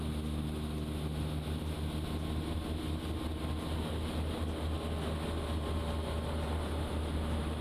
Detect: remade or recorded recorded